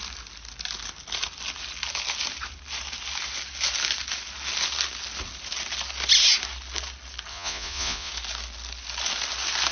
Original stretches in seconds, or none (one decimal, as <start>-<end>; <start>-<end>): 0.0-7.3; 8.1-9.7